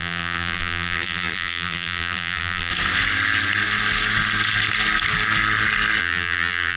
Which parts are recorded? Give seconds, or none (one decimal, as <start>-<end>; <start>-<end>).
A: 2.7-6.0

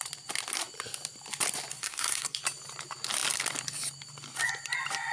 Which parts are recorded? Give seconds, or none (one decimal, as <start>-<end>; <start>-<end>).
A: 0.0-1.7; 2.4-5.1

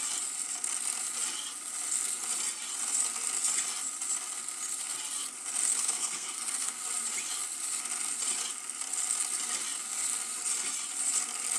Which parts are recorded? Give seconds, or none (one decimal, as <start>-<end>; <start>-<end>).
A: 0.0-5.7; 6.9-11.6

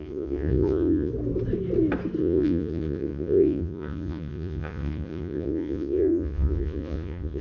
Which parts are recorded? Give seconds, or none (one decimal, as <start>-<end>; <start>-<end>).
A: 1.1-2.2

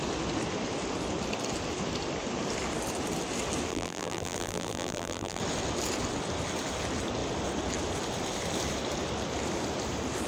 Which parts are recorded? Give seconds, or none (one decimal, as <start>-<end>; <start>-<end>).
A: 0.0-3.7; 5.4-10.3